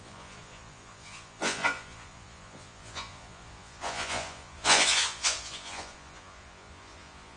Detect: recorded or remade remade